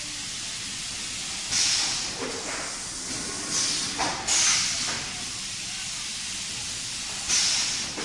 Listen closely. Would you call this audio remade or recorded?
recorded